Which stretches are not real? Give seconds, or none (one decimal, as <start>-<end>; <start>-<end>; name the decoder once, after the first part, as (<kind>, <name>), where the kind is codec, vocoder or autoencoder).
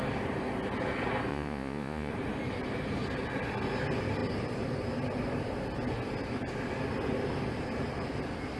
1.3-2.1 (vocoder, Vocos)